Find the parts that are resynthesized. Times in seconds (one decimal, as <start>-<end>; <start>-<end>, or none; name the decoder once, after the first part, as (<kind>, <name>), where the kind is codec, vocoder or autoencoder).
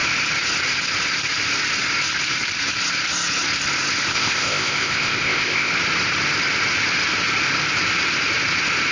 4.1-5.7 (codec, ZipCodec)